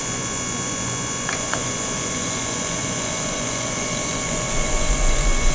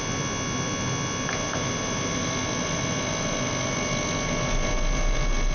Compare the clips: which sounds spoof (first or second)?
first